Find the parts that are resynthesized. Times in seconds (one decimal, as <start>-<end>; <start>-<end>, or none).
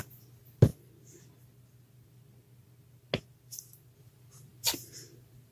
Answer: none